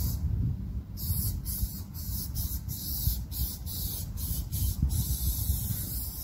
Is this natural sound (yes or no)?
yes